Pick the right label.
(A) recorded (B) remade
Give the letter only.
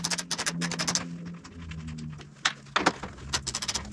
A